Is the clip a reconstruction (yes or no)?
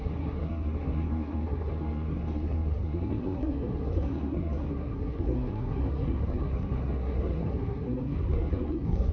yes